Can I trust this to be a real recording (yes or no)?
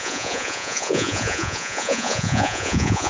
no